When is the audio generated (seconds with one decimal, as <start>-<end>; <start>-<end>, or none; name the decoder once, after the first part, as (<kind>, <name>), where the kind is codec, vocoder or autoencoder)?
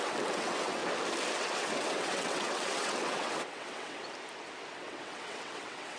0.0-0.8 (vocoder, WaveNeXt); 1.4-4.0; 4.7-6.0